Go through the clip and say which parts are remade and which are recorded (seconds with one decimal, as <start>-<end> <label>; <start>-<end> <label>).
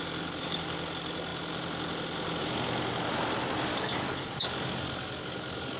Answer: 0.0-3.7 recorded; 3.7-5.8 remade